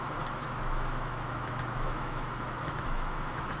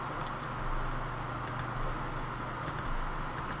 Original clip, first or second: second